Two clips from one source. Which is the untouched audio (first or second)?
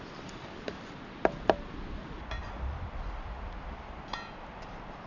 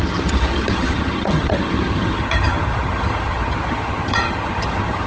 first